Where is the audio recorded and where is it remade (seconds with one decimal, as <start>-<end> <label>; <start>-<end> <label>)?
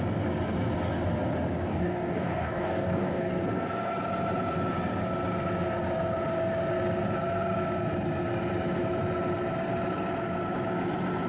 0.0-1.7 recorded; 1.7-3.3 remade; 3.3-11.3 recorded